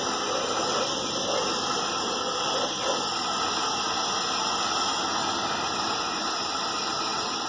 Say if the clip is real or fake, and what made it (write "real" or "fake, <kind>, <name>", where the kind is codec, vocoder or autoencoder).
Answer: real